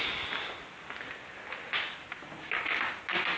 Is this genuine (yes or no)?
yes